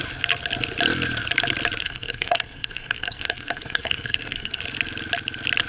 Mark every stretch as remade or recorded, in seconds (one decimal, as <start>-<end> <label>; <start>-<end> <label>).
0.0-1.8 recorded; 1.8-4.6 remade; 4.6-5.7 recorded

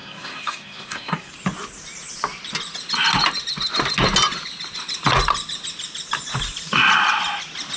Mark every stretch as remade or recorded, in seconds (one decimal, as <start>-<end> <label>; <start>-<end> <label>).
0.0-1.3 remade; 1.3-7.8 recorded

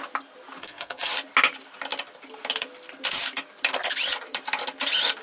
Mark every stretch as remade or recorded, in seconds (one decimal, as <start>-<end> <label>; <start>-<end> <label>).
0.0-0.6 recorded; 0.6-1.1 remade; 1.1-5.2 recorded

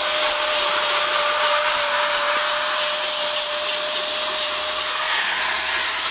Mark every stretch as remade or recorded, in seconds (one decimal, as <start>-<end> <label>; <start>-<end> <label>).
0.0-4.9 recorded; 4.9-5.4 remade; 5.4-6.1 recorded

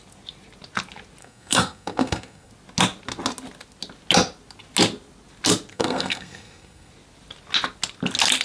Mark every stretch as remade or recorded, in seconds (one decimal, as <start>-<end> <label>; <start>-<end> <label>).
0.0-1.2 recorded; 1.2-2.5 remade; 2.5-5.7 recorded; 5.7-6.9 remade; 6.9-8.4 recorded

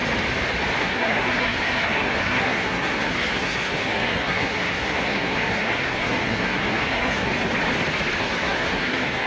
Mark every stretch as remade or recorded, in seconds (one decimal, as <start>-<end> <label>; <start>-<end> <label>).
0.0-0.8 recorded; 0.8-7.3 remade; 7.3-8.2 recorded; 8.2-9.3 remade

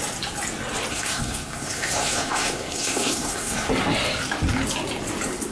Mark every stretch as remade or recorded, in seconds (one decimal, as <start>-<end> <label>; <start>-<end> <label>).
0.0-0.9 recorded; 0.9-3.7 remade; 3.7-5.5 recorded

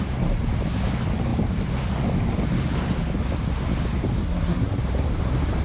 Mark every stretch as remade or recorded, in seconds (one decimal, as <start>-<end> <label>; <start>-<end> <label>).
0.0-4.2 recorded; 4.2-4.8 remade; 4.8-5.6 recorded